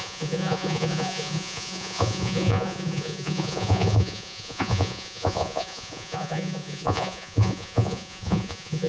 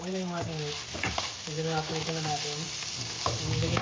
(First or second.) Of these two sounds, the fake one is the first